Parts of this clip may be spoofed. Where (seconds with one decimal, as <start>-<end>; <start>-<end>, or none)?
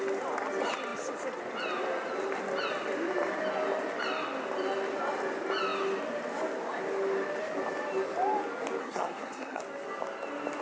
8.8-9.6